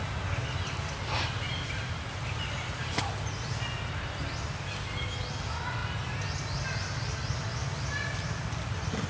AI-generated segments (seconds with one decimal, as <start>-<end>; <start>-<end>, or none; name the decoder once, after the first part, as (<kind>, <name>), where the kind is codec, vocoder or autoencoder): none